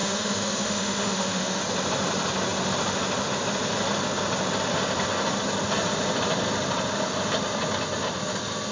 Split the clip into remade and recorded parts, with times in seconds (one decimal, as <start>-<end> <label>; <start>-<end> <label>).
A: 0.0-1.6 remade; 1.6-8.7 recorded